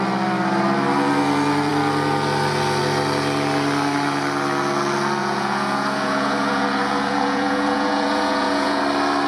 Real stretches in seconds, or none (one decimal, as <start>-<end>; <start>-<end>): 0.0-5.2; 8.8-9.3